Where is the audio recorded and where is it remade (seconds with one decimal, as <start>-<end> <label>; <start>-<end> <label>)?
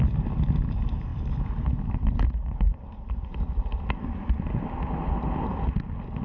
0.0-6.2 recorded